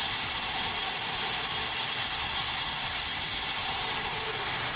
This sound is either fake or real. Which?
real